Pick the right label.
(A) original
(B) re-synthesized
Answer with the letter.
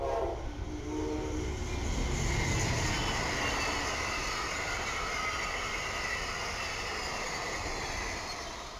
A